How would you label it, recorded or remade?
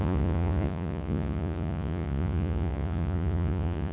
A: remade